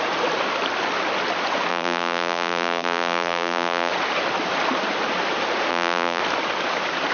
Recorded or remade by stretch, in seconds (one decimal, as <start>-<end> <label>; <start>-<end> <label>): 0.0-1.7 recorded; 1.7-3.9 remade; 3.9-5.7 recorded; 5.7-6.2 remade; 6.2-7.1 recorded